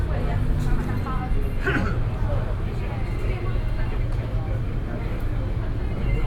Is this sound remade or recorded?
recorded